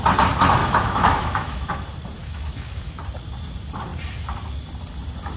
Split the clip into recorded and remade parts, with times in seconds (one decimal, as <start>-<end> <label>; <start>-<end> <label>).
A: 0.0-0.6 recorded; 0.6-1.7 remade; 1.7-2.2 recorded; 2.2-3.0 remade; 3.0-5.4 recorded